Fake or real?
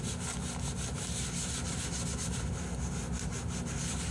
real